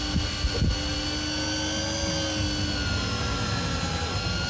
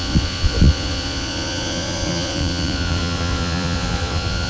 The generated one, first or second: second